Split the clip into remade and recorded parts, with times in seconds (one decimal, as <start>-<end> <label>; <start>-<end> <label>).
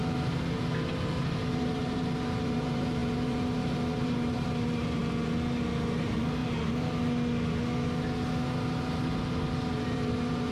0.0-1.5 recorded; 1.5-5.0 remade; 5.0-6.0 recorded; 6.0-6.4 remade; 6.4-9.7 recorded; 9.7-10.5 remade